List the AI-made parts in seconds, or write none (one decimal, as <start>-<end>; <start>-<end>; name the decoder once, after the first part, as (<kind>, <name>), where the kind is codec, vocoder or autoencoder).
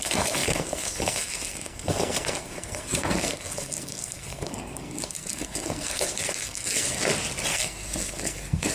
0.0-7.0 (codec, SNAC); 7.5-8.7